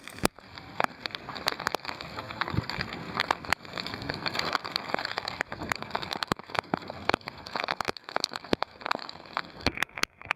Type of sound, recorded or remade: remade